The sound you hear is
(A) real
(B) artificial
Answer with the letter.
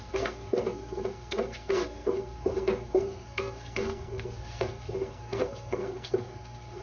B